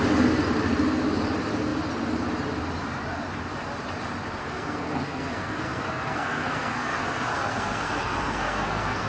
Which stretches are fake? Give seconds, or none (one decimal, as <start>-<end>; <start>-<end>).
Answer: 4.4-9.1